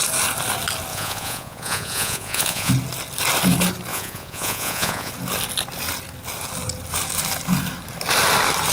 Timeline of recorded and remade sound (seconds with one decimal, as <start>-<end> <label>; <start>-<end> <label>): 0.0-0.9 recorded; 0.9-2.7 remade; 2.7-3.9 recorded; 3.9-5.1 remade; 5.1-8.7 recorded